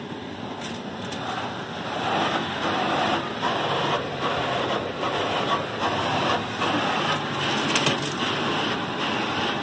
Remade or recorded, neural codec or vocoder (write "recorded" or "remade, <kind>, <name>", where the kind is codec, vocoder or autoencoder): recorded